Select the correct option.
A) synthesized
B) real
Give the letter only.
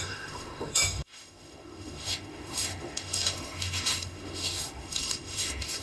A